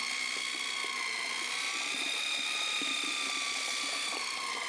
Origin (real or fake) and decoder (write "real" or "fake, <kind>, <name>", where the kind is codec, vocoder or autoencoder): fake, vocoder, BigVGAN v2